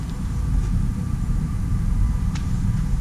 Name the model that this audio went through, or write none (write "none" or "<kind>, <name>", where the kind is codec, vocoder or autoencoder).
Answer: vocoder, BigVGAN v2